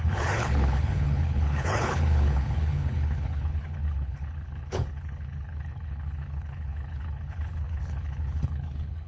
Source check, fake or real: fake